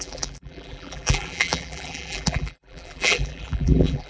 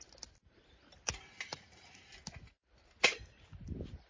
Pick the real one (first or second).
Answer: second